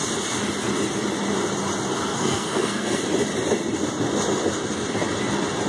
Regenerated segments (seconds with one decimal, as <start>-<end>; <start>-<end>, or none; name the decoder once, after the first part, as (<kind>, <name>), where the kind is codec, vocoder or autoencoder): 2.1-3.0 (codec, SNAC)